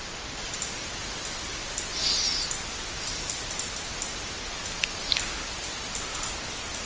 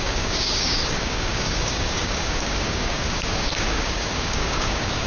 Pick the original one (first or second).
first